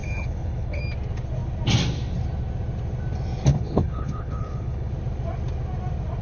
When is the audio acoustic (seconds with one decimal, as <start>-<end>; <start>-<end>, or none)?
0.8-3.5; 4.9-6.2